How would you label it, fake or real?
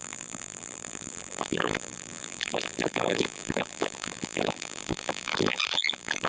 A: fake